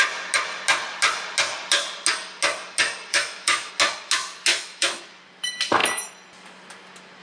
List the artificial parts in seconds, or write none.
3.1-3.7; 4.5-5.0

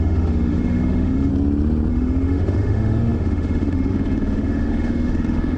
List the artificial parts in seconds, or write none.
0.0-1.3; 1.9-5.6

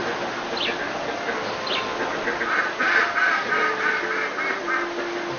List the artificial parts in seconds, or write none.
none

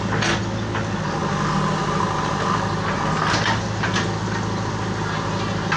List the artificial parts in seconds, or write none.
none